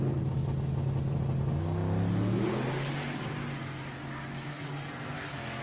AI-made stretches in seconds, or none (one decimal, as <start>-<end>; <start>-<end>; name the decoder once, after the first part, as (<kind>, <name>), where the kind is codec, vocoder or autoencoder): 4.5-5.1 (codec, SNAC)